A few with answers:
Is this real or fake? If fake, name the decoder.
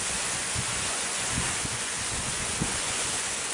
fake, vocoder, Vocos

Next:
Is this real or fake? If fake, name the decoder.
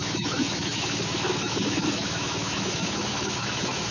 fake, autoencoder, DAC-VAE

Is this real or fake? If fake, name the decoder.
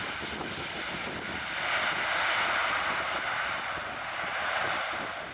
real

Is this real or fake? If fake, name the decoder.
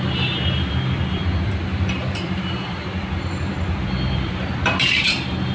fake, vocoder, BigVGAN v2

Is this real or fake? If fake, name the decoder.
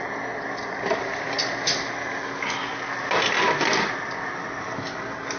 real